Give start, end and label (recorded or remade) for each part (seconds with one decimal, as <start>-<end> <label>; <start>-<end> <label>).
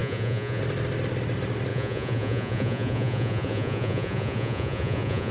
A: 0.0-0.6 remade; 0.6-1.7 recorded; 1.7-5.3 remade